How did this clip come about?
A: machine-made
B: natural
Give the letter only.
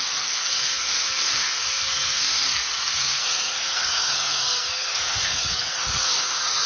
A